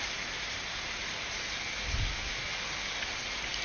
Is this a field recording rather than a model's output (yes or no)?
yes